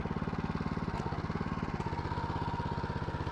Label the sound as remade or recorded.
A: recorded